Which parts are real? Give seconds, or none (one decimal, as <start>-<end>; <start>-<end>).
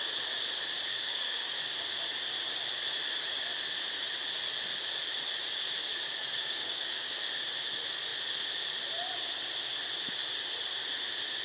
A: 0.0-0.9; 1.5-5.9; 7.2-11.4